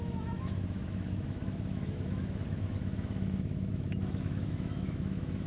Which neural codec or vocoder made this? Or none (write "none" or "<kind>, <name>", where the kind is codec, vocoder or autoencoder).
autoencoder, DAC-VAE